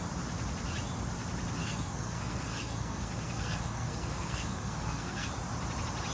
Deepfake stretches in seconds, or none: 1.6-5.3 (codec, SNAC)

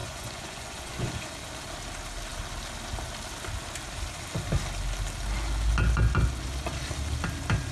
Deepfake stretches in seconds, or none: 0.0-1.3 (vocoder, Vocos)

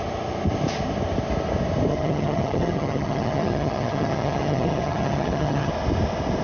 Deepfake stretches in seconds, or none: 1.9-5.7 (vocoder, HiFi-GAN)

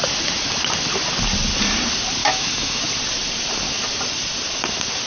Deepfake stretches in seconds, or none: 2.2-2.8 (autoencoder, DAC-VAE)